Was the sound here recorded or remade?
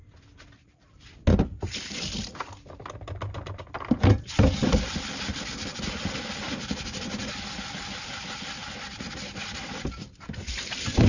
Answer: recorded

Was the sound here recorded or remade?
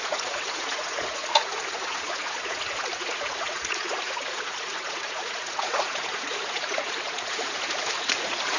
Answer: remade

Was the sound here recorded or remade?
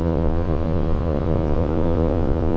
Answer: remade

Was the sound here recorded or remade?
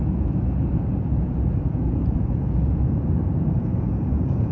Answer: remade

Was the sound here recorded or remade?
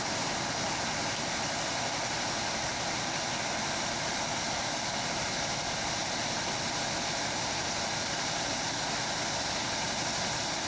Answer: recorded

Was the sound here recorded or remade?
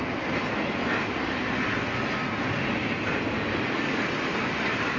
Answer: recorded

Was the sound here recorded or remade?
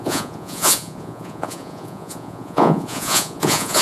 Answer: remade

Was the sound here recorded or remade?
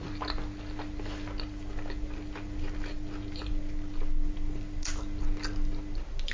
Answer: recorded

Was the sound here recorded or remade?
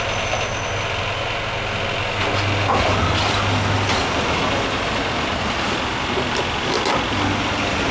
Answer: recorded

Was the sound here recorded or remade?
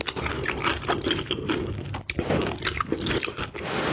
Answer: recorded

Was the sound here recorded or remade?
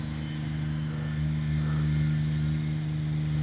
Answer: recorded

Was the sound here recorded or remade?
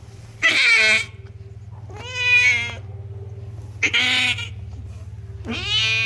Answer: recorded